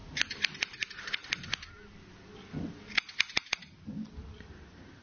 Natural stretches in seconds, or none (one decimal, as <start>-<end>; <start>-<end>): 0.0-5.0